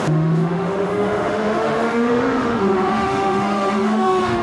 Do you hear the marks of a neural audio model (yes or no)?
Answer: yes